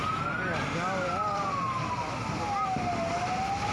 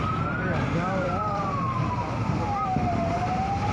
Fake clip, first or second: second